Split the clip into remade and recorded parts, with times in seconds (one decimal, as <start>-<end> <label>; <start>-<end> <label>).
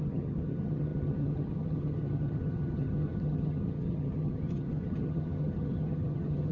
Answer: 0.0-6.5 remade